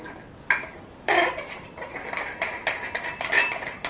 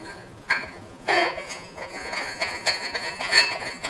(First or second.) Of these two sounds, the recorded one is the first